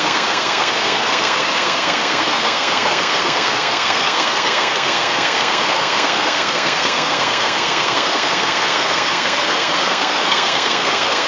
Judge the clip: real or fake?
fake